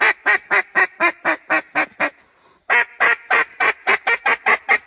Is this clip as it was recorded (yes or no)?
yes